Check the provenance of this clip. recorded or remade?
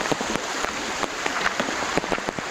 remade